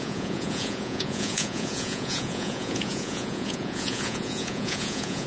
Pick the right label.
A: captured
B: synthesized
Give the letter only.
B